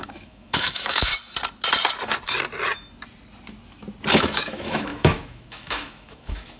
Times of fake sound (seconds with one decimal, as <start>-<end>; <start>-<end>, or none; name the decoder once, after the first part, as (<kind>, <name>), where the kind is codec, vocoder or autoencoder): 0.0-1.1 (autoencoder, DAC-VAE); 4.1-6.6